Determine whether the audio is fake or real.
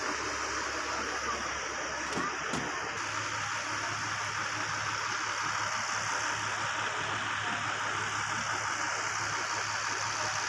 real